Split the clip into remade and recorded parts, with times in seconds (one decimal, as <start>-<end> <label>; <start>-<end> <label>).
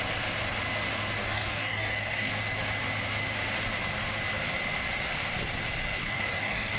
0.0-1.2 recorded; 1.2-2.3 remade; 2.3-6.0 recorded; 6.0-6.8 remade